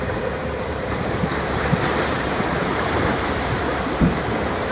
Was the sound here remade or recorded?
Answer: remade